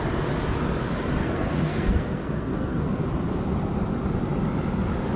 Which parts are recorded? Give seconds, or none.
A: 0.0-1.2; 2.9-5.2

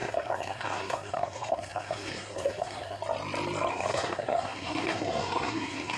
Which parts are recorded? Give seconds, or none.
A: 3.0-3.7

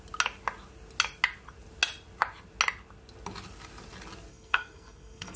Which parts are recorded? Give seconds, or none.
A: 0.0-4.3